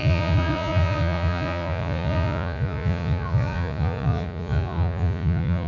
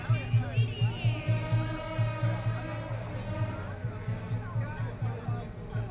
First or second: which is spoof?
first